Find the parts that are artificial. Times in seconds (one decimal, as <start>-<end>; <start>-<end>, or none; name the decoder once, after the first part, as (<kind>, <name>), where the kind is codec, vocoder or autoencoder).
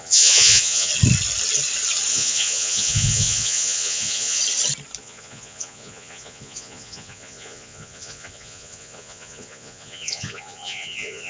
0.0-0.9 (vocoder, Vocos); 2.1-4.4; 5.0-11.3